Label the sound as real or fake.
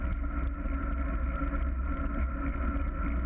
real